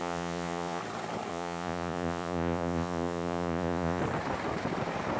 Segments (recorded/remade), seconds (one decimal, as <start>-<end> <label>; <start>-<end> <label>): 0.0-0.8 remade; 0.8-1.3 recorded; 1.3-4.0 remade; 4.0-5.2 recorded